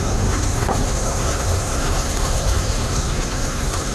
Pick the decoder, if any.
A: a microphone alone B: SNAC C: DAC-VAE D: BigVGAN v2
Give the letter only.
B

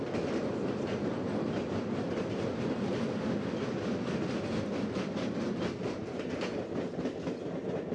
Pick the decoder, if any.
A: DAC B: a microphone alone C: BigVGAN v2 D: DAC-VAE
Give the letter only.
B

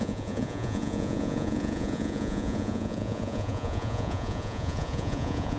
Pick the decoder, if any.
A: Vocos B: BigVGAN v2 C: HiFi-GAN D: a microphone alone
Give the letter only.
A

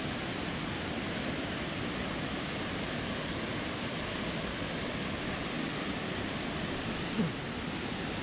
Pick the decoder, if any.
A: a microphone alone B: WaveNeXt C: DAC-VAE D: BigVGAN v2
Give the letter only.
A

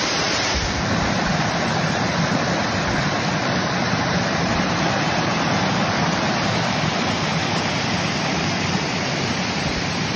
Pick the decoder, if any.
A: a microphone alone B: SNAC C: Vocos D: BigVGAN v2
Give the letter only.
D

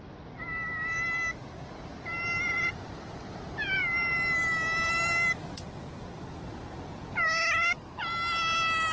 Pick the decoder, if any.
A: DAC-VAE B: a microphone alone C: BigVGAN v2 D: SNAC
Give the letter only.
B